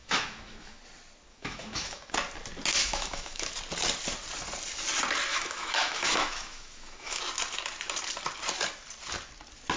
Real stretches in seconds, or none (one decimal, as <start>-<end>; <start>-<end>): 0.8-1.3; 2.1-2.8; 3.5-5.3; 7.2-9.8